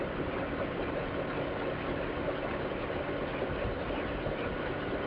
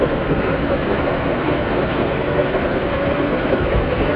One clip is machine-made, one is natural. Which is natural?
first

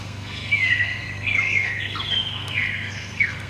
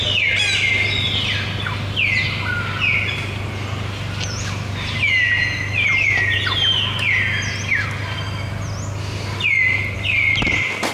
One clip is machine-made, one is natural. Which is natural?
second